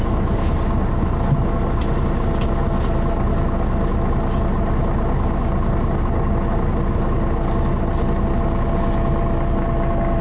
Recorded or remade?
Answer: recorded